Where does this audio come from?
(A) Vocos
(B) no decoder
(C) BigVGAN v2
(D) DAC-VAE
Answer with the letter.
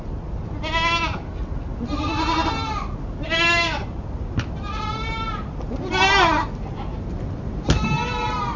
B